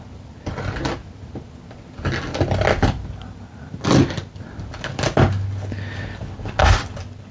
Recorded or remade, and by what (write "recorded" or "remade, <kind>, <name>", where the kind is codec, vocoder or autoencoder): recorded